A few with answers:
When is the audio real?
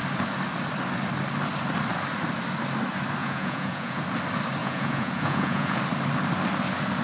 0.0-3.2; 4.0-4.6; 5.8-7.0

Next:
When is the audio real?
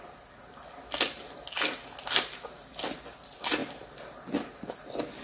0.0-5.2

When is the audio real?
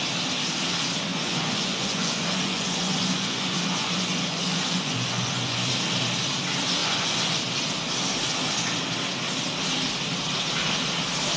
0.0-1.1; 5.7-6.8; 7.4-11.4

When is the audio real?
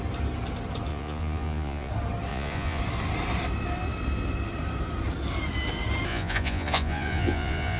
0.0-0.9; 1.9-2.3; 2.8-6.1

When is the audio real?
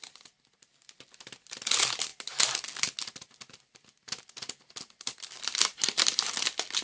0.0-6.8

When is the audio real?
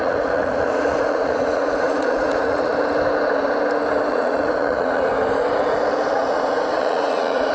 2.7-4.1; 5.1-6.1